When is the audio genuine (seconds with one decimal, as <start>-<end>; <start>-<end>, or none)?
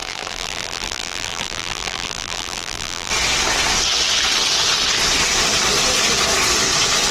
3.1-7.1